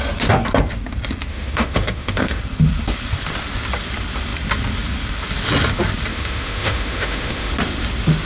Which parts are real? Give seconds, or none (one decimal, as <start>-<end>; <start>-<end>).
0.0-1.3; 2.4-6.1; 7.5-8.3